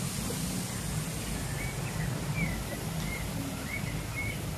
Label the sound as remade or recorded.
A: recorded